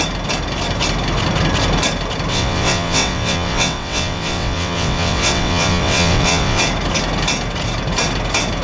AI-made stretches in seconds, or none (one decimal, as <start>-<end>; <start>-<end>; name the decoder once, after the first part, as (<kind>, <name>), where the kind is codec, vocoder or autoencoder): 2.3-6.6 (vocoder, WaveNeXt)